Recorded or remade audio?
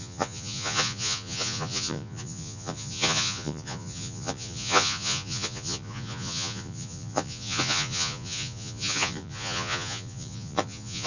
remade